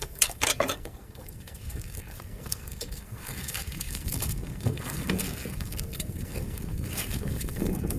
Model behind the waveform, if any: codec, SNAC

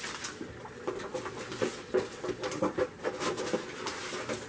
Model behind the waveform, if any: none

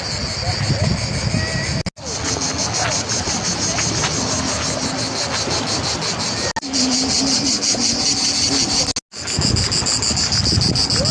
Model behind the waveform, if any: none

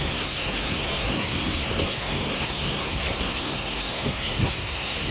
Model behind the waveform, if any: codec, SNAC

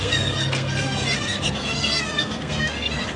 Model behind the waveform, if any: codec, SNAC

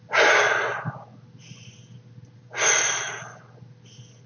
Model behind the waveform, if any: none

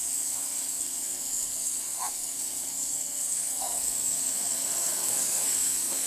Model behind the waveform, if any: codec, SNAC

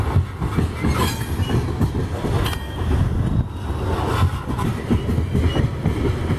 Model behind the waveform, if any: none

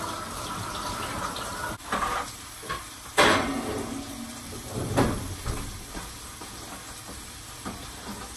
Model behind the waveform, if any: none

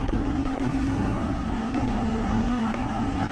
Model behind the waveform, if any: codec, SNAC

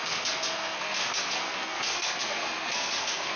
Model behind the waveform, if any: codec, SNAC